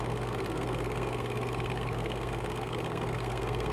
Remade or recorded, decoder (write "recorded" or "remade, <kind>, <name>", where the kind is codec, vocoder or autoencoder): remade, codec, SNAC